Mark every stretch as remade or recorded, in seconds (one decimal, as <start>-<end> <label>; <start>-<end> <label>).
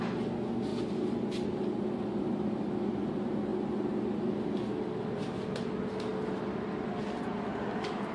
0.0-8.1 recorded